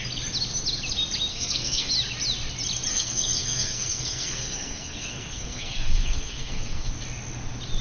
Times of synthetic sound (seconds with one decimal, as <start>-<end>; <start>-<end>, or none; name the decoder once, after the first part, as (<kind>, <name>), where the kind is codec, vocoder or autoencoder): 1.3-1.9 (codec, SNAC); 2.9-6.9